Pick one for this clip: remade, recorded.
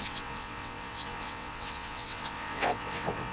remade